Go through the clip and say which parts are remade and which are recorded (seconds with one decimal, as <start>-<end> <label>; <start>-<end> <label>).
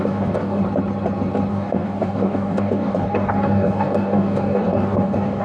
0.0-0.6 remade; 0.6-1.5 recorded; 1.5-5.4 remade